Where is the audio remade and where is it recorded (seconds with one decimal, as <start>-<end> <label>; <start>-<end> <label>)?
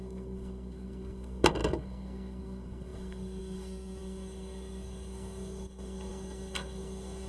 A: 0.0-7.3 remade